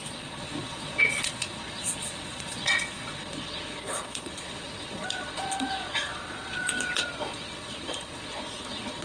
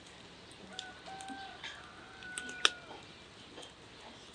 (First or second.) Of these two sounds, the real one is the second